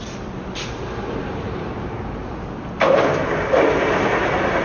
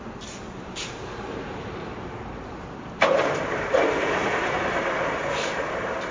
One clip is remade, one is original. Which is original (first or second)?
first